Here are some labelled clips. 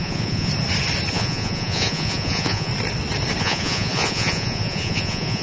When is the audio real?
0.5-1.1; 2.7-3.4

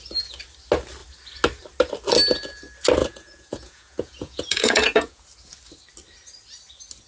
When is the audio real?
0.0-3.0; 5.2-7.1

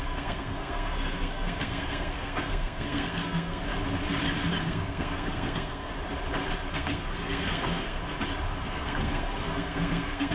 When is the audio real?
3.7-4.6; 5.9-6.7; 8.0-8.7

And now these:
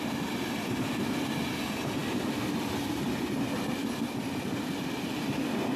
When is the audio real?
0.0-5.8

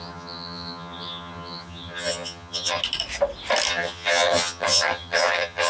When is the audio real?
2.8-3.7

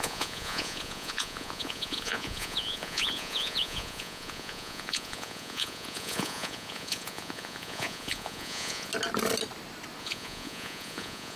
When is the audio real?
8.9-10.0

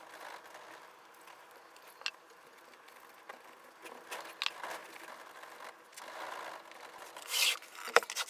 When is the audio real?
0.0-8.3

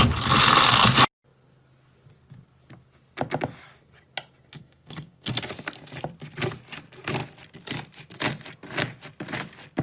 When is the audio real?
0.0-4.6; 5.4-9.8